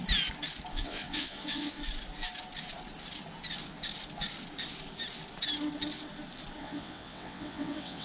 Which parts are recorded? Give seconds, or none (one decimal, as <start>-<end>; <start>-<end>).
0.0-0.7; 1.8-6.6